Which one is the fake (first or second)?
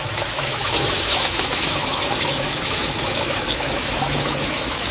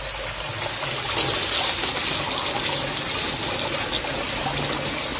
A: first